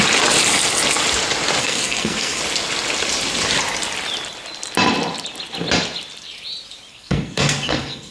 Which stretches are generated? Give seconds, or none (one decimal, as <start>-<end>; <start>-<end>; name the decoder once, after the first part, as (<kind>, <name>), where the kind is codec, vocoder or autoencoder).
1.6-2.4 (codec, SNAC); 6.9-8.1